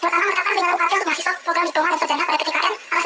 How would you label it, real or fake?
fake